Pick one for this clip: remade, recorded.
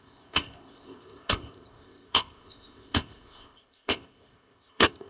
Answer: remade